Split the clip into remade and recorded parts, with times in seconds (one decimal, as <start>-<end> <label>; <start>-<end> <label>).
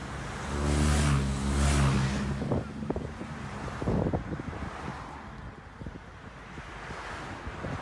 0.0-7.8 recorded